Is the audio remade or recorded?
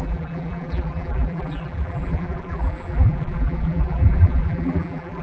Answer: remade